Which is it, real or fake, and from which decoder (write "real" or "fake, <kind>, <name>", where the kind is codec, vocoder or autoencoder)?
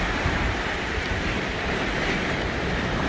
fake, vocoder, BigVGAN v2